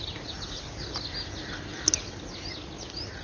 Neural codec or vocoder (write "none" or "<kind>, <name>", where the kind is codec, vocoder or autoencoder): none